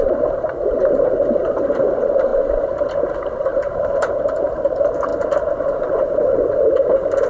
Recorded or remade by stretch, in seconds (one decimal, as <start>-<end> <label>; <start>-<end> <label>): 0.0-3.5 recorded; 3.5-4.4 remade; 4.4-5.1 recorded; 5.1-6.4 remade; 6.4-7.3 recorded